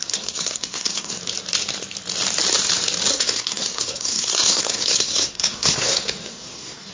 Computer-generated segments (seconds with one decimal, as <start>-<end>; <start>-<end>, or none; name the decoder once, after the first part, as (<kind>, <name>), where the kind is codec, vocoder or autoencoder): 0.0-1.2 (codec, SNAC); 3.1-6.9